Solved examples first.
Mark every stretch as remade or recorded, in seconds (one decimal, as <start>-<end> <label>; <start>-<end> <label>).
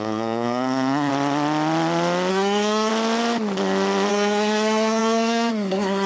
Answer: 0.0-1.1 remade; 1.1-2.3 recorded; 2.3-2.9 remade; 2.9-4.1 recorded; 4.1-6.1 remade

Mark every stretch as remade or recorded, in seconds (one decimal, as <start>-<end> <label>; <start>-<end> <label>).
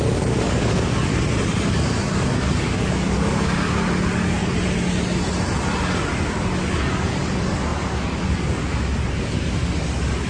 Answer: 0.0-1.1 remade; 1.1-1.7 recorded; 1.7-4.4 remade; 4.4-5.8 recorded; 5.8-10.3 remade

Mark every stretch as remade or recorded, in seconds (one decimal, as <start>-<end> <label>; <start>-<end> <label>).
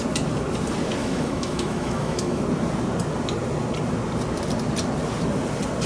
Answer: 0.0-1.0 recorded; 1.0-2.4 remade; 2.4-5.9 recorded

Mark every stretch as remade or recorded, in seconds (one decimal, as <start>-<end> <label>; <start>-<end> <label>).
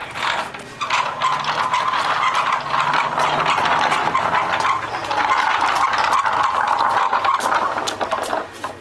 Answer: 0.0-8.8 recorded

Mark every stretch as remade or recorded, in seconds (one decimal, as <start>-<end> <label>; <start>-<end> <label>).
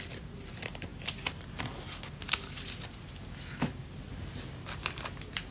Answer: 0.0-5.5 recorded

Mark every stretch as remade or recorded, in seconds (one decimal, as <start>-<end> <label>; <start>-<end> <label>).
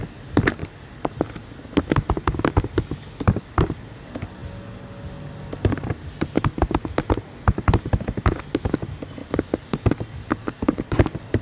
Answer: 0.0-11.4 recorded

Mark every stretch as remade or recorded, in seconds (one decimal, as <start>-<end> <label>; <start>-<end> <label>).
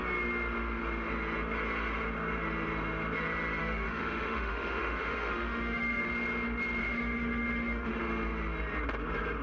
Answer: 0.0-3.6 recorded; 3.6-6.1 remade; 6.1-6.8 recorded; 6.8-8.0 remade; 8.0-9.4 recorded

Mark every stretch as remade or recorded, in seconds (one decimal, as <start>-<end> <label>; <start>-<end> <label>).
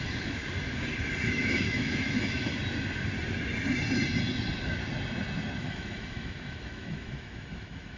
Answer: 0.0-0.4 remade; 0.4-1.3 recorded; 1.3-2.5 remade; 2.5-5.6 recorded; 5.6-8.0 remade